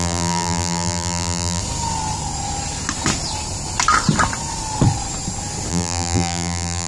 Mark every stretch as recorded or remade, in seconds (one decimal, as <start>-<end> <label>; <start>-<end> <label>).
0.0-1.6 remade; 1.6-5.7 recorded; 5.7-6.9 remade